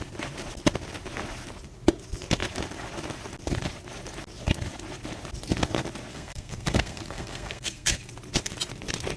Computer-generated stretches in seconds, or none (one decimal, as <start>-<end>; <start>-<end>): 6.1-8.1

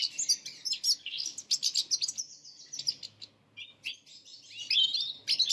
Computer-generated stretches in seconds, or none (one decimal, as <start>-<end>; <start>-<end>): none